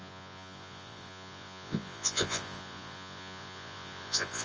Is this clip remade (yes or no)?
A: yes